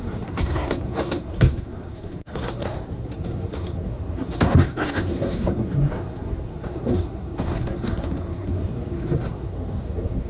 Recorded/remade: remade